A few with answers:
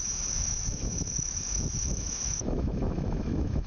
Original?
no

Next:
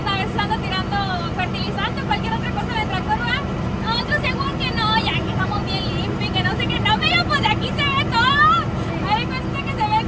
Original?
yes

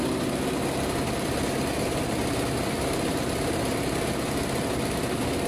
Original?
yes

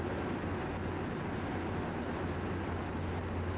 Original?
yes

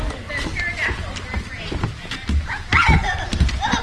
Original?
yes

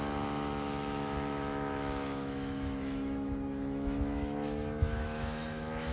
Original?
no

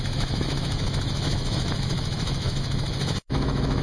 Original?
no